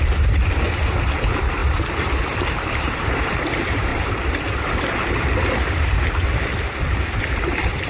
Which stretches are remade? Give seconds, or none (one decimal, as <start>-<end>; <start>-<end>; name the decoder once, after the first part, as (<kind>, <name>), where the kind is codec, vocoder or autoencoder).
0.0-3.9 (vocoder, BigVGAN v2); 7.2-7.9